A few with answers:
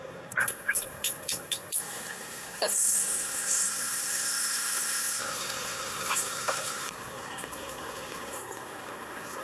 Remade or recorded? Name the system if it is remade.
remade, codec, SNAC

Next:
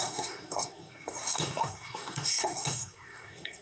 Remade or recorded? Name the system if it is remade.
remade, codec, SNAC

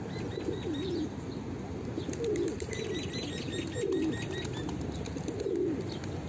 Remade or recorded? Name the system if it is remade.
recorded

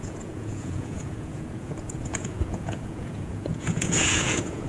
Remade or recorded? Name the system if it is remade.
remade, vocoder, Vocos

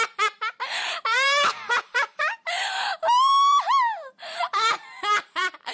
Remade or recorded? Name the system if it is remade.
remade, vocoder, BigVGAN v2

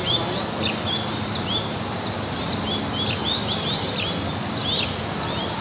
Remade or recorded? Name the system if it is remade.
recorded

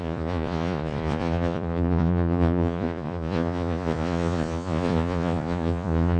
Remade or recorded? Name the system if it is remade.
remade, vocoder, Vocos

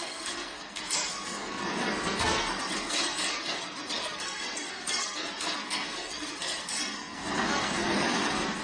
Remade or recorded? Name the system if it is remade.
remade, codec, SNAC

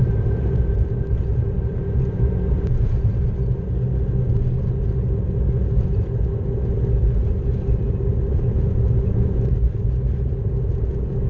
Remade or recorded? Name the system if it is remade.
recorded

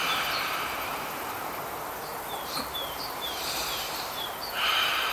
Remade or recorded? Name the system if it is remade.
remade, vocoder, BigVGAN v2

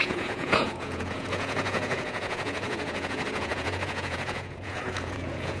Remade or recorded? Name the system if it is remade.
remade, vocoder, Vocos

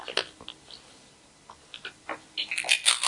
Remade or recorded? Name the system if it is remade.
recorded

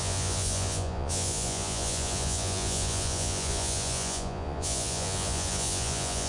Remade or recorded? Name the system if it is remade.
remade, vocoder, Vocos